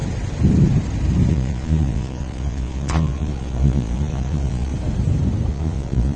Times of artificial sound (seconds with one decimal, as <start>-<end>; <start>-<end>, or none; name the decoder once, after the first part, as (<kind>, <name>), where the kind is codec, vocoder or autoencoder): 1.3-4.7 (vocoder, Vocos); 5.5-6.2